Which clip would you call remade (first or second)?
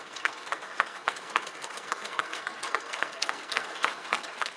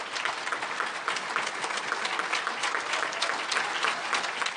first